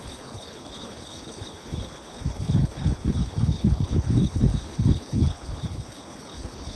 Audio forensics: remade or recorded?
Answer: remade